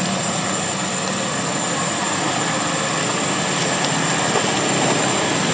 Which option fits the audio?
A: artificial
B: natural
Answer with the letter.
B